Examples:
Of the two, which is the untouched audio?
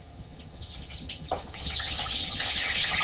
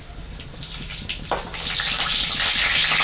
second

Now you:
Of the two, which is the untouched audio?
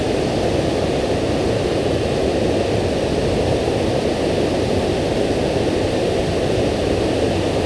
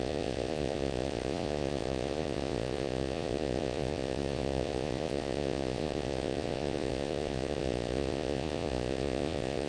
first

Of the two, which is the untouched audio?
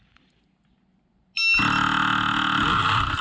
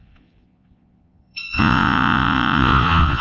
first